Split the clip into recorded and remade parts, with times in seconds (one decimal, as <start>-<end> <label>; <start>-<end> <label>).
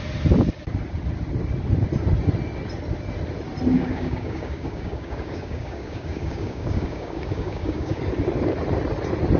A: 0.0-3.7 recorded; 3.7-8.0 remade; 8.0-9.4 recorded